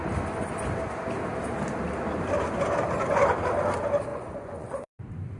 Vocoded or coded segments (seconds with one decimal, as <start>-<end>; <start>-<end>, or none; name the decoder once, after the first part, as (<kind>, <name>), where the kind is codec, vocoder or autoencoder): 4.1-5.0 (vocoder, Vocos)